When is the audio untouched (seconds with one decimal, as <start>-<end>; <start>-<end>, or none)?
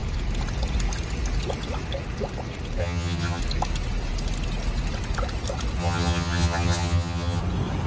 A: 0.0-2.8; 3.4-5.8; 7.4-7.9